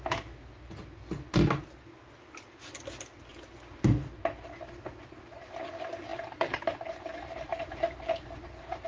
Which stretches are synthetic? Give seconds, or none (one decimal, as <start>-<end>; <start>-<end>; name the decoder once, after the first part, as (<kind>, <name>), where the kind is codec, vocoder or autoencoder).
6.1-8.9 (vocoder, BigVGAN v2)